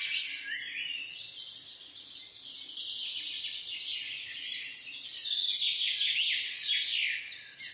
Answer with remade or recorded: recorded